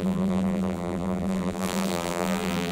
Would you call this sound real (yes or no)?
no